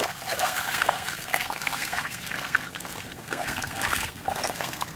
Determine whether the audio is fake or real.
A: fake